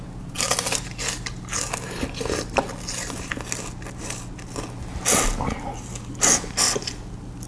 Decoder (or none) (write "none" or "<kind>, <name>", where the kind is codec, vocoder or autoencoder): none